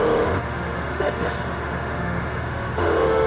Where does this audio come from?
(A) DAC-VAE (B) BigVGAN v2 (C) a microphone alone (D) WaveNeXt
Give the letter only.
A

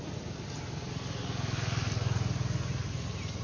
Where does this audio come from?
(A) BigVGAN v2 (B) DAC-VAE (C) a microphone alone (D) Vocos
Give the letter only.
C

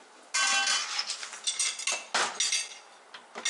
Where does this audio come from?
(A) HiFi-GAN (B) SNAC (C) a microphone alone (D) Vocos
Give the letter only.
C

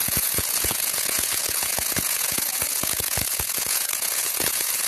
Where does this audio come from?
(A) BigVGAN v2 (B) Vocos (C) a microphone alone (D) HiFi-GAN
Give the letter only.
B